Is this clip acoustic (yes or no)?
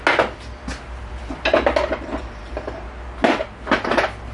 yes